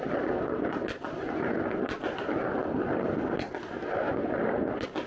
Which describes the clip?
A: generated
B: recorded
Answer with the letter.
B